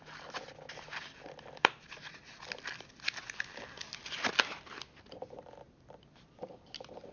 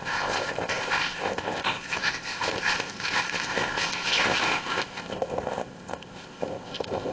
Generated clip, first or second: second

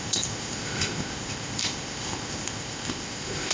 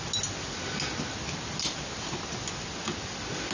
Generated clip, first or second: first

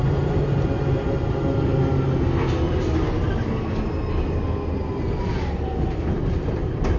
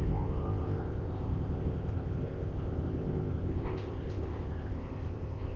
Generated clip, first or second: second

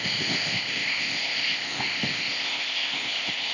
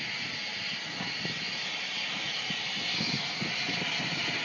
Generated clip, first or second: first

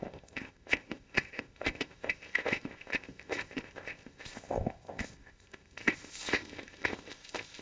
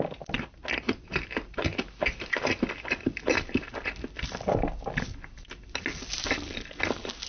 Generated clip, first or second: first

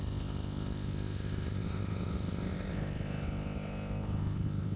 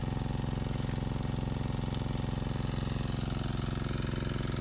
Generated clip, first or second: first